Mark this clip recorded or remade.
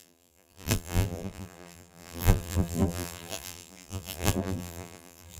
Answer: remade